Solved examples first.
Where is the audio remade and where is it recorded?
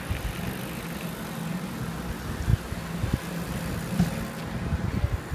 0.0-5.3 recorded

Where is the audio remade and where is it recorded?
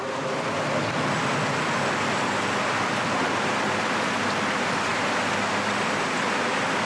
0.0-6.9 recorded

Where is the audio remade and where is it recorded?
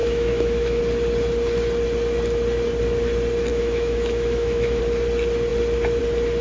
0.0-0.8 remade; 0.8-3.5 recorded; 3.5-4.8 remade; 4.8-6.4 recorded